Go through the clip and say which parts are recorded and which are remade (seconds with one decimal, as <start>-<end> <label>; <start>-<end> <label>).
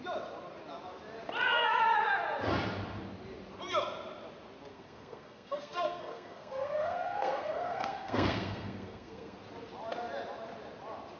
0.0-4.7 recorded; 4.7-9.4 remade; 9.4-11.2 recorded